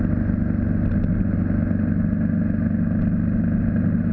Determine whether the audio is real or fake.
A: real